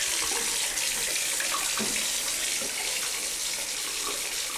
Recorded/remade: recorded